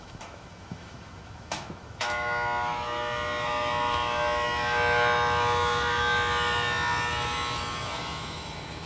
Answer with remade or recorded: remade